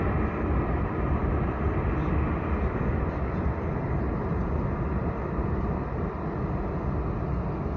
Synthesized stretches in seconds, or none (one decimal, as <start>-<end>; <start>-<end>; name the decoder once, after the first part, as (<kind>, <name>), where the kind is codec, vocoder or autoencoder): none